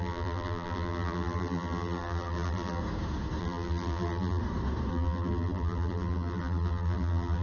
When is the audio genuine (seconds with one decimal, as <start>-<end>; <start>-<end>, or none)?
2.8-3.4; 4.4-4.9